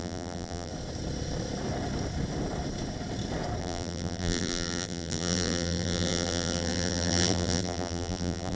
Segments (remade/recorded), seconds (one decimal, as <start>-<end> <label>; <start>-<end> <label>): 0.0-0.7 remade; 0.7-3.6 recorded; 3.6-8.5 remade